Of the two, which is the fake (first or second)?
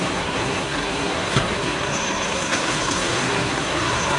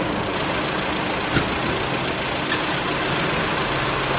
first